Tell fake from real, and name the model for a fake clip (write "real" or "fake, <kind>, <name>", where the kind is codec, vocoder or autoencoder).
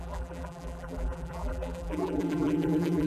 fake, vocoder, BigVGAN v2